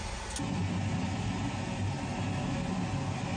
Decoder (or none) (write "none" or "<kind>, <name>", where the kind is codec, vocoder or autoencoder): none